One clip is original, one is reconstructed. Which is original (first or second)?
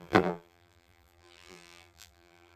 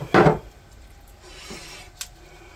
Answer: second